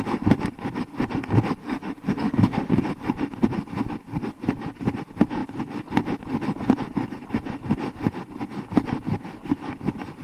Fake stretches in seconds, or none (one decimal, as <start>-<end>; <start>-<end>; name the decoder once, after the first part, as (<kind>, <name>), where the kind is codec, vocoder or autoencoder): 1.6-2.8 (autoencoder, DAC-VAE)